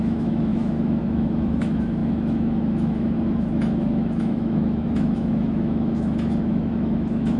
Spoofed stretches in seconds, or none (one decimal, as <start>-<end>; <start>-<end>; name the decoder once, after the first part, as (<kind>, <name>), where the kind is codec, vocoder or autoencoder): 0.0-7.4 (autoencoder, DAC-VAE)